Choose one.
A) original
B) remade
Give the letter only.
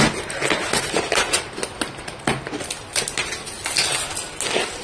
A